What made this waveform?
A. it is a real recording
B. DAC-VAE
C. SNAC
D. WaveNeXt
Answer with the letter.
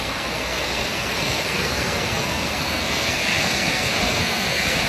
C